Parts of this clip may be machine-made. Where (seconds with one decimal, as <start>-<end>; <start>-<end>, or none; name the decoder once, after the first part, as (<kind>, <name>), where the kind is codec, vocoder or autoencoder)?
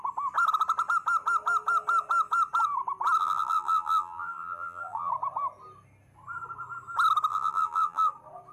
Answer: 3.2-5.1 (vocoder, BigVGAN v2); 7.3-8.1